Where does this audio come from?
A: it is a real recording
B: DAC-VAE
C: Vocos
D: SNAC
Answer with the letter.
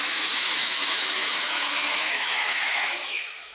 B